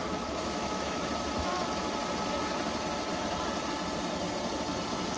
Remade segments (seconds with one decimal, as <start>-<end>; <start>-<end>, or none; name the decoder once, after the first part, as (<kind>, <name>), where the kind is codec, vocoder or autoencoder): 0.0-1.0 (autoencoder, DAC-VAE)